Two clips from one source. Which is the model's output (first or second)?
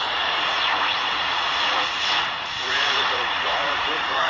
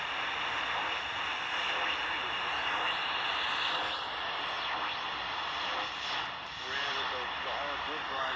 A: first